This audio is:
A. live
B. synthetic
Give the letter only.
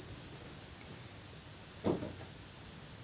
A